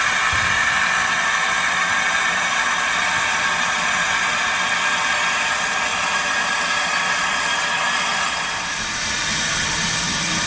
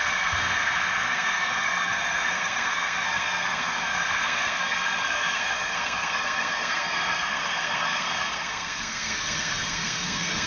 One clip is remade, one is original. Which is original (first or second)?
first